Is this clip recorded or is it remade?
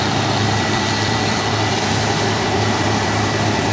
remade